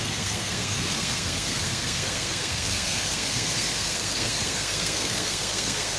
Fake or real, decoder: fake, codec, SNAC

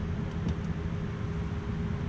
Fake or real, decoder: real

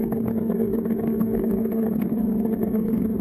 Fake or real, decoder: fake, codec, SNAC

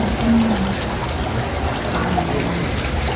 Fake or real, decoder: real